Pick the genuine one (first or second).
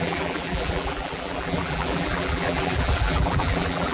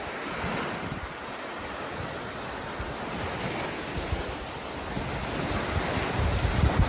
second